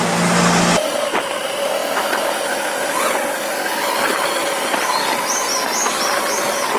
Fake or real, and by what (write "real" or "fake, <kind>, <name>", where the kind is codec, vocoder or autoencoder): real